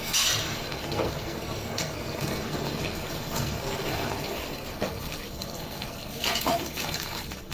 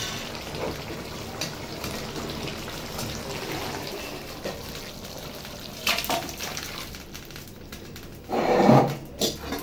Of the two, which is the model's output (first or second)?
first